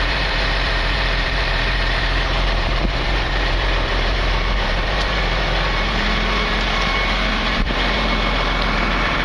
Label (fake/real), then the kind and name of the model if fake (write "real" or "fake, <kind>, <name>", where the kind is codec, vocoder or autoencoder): fake, vocoder, BigVGAN v2